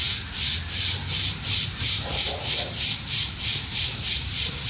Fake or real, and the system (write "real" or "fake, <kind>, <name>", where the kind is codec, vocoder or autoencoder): fake, vocoder, BigVGAN v2